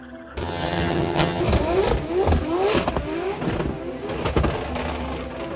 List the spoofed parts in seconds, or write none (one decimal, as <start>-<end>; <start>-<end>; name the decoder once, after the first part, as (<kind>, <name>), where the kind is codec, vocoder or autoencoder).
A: 0.4-1.4 (vocoder, HiFi-GAN)